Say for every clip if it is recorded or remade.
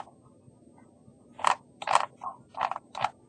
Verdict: recorded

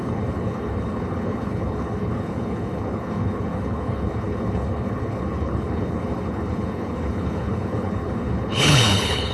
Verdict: remade